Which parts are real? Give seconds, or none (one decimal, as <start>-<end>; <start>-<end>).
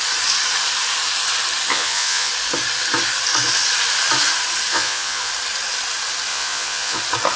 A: 0.0-1.7; 2.3-4.7; 5.3-6.3; 7.0-7.4